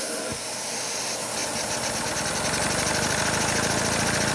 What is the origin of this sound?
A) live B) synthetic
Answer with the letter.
A